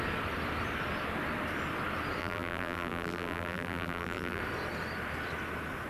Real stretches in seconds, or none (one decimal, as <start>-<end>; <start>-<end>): 0.0-2.2; 4.4-5.9